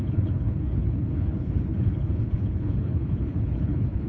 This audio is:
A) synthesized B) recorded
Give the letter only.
A